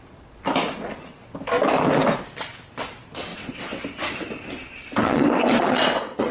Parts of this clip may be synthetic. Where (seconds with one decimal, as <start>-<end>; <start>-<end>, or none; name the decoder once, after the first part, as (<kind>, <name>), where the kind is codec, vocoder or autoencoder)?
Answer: 3.3-3.8 (vocoder, WaveNeXt); 5.0-6.3